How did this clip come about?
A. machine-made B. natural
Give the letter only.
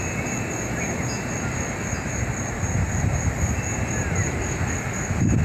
B